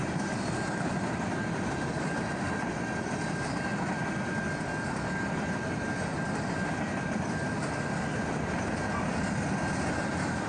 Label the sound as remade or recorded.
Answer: recorded